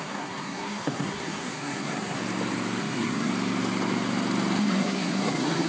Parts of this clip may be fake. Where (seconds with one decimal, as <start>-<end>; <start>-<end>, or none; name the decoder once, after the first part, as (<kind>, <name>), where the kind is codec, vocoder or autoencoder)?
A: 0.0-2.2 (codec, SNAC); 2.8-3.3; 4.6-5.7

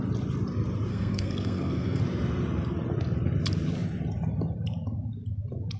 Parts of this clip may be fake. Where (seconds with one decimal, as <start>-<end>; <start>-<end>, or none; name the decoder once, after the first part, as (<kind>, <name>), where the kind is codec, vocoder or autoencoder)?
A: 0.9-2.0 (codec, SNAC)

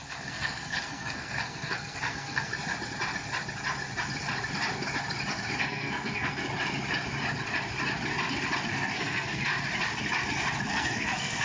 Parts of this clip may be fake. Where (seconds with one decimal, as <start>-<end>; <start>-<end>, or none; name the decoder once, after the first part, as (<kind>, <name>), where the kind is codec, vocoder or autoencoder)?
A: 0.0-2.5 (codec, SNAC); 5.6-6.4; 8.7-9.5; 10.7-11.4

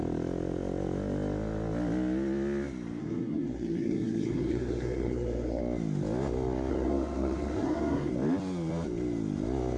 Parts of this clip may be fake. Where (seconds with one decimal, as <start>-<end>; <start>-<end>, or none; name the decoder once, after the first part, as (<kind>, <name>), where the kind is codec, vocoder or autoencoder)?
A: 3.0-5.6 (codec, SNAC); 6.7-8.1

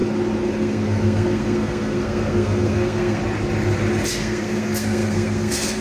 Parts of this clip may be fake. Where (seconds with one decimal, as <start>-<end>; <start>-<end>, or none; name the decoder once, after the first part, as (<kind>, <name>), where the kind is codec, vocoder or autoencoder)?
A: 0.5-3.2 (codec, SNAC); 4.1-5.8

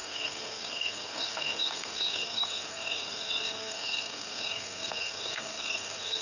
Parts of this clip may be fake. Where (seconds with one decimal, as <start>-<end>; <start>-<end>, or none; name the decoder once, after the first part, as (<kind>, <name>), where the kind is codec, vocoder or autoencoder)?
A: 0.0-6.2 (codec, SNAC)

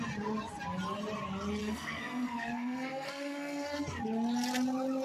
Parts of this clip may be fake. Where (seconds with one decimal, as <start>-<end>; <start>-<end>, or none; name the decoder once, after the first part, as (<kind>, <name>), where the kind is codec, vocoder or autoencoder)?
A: 1.6-3.8 (codec, SNAC)